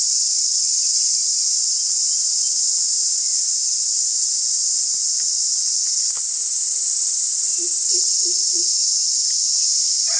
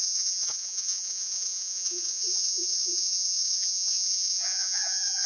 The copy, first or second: second